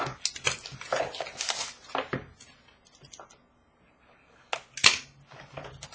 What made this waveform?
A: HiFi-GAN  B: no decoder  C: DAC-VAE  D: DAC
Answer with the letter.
B